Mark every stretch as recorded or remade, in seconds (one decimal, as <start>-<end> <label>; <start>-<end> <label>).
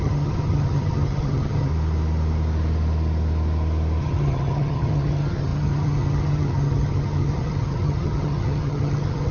0.0-1.7 remade; 1.7-4.0 recorded; 4.0-9.3 remade